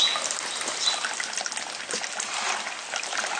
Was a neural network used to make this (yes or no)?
no